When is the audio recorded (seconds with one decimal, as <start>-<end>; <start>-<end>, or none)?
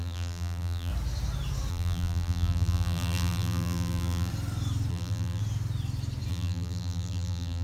0.9-1.7; 4.3-4.9; 5.4-6.3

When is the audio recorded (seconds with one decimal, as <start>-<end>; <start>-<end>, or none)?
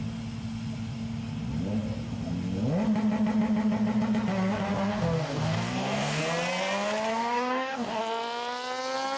0.0-4.9; 6.2-7.1; 8.0-9.2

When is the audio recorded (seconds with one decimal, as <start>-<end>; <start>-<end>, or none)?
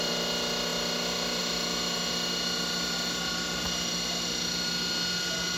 0.0-5.6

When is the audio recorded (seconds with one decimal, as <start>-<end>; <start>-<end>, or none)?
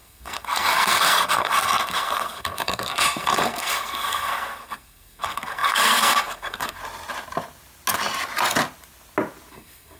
6.8-9.5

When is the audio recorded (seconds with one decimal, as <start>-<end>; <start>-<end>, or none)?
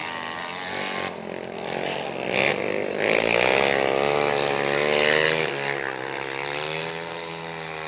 0.0-7.9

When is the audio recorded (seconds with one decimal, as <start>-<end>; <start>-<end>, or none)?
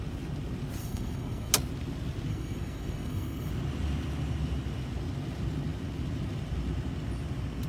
0.0-0.8; 1.5-2.3; 3.5-7.7